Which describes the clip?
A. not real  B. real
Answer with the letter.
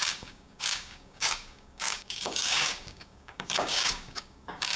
A